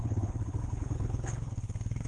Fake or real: fake